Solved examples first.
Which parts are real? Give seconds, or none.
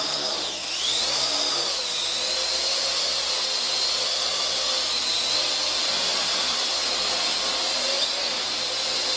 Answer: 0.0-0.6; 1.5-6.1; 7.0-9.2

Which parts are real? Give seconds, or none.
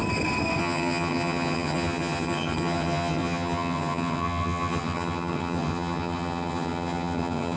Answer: 0.0-0.6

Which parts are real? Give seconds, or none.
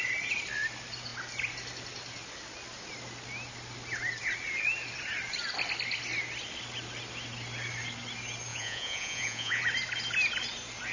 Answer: 0.0-8.5; 9.6-10.9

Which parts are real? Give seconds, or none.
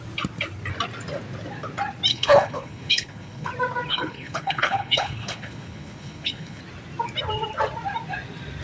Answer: 0.0-2.1; 3.5-3.9; 6.6-8.6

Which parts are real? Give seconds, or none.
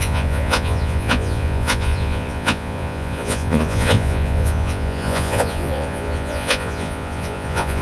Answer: none